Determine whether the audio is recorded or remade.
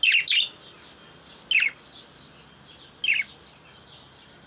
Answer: recorded